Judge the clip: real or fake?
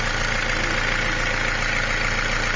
real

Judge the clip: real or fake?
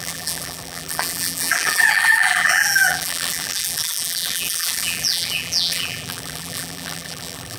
fake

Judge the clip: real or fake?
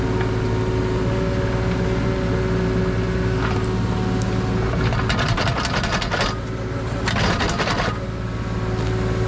real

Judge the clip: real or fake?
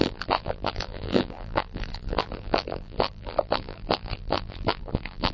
fake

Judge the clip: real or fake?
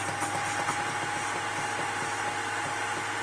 real